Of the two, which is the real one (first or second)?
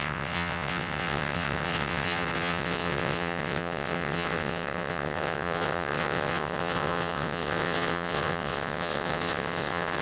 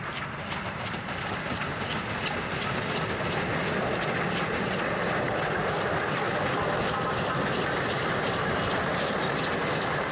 second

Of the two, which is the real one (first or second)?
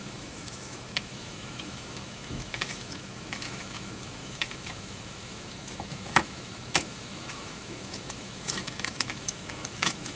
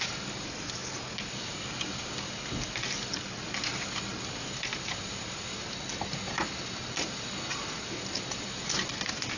second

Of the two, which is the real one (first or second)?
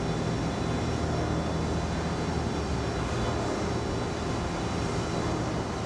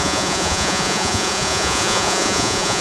first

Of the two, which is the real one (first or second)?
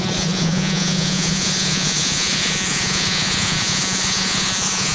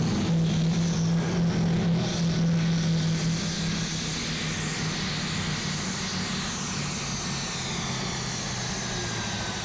second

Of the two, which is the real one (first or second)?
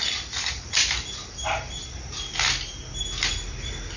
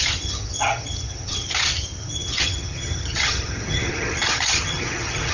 first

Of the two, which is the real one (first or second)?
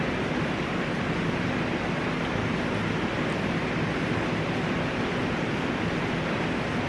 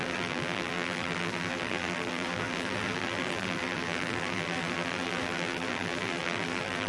first